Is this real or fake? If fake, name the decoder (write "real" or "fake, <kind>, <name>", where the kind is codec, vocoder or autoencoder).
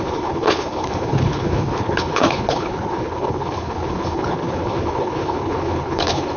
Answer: fake, codec, HILCodec